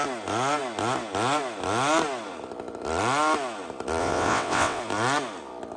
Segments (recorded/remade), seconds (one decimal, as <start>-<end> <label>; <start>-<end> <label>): 0.0-4.0 recorded; 4.0-4.8 remade; 4.8-5.8 recorded